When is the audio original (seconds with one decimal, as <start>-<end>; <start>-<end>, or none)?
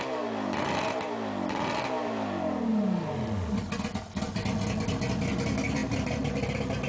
0.0-6.9